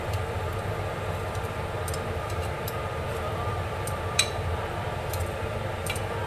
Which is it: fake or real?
fake